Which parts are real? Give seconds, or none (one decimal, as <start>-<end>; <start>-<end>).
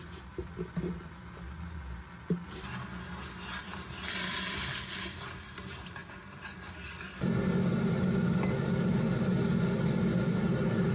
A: 0.0-6.0; 7.1-10.9